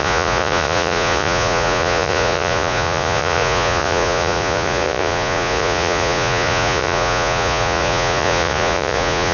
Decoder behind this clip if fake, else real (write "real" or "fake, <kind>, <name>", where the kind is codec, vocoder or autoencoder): fake, vocoder, Vocos